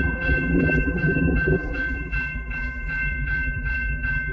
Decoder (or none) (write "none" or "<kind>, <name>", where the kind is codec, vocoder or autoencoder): vocoder, BigVGAN v2